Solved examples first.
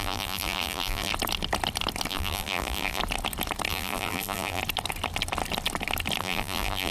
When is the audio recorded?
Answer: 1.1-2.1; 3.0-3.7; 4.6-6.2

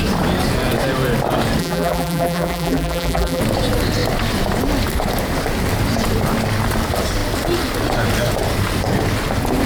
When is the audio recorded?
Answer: 0.0-1.6; 3.4-9.7

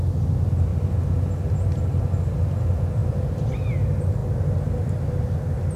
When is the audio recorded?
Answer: 0.0-0.7; 1.8-5.8

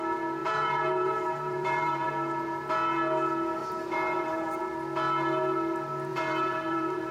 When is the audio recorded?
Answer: 0.0-0.4; 2.1-3.6; 4.6-6.1